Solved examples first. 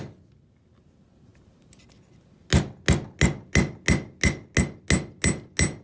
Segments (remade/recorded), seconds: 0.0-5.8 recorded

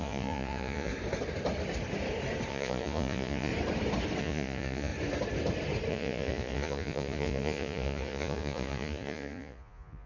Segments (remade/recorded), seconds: 0.0-0.9 remade; 0.9-2.5 recorded; 2.5-3.5 remade; 3.5-4.2 recorded; 4.2-4.9 remade; 4.9-5.9 recorded; 5.9-10.1 remade

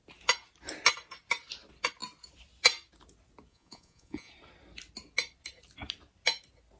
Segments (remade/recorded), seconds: 0.0-3.5 recorded; 3.5-4.3 remade; 4.3-6.8 recorded

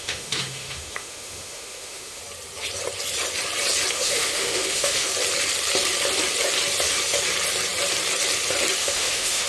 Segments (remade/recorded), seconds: 0.0-2.2 remade; 2.2-3.9 recorded; 3.9-5.1 remade; 5.1-8.8 recorded; 8.8-9.5 remade